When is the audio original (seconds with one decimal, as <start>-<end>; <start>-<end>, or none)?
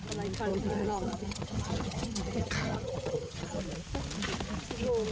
0.0-0.5; 3.6-5.1